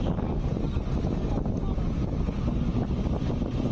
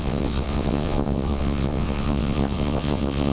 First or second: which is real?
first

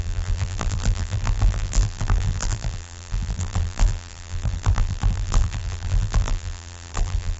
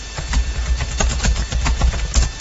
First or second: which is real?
second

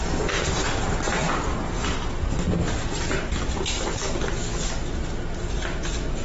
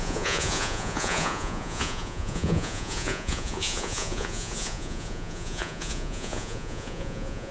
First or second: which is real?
first